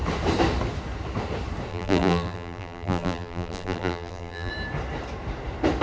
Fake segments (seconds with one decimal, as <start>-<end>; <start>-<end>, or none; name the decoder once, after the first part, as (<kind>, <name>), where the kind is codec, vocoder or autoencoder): 1.7-4.5 (vocoder, BigVGAN v2)